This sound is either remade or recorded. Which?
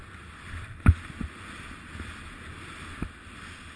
recorded